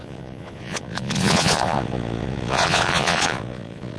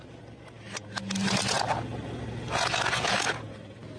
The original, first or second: second